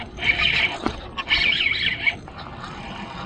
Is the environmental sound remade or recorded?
recorded